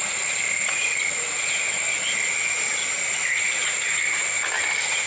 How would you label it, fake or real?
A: real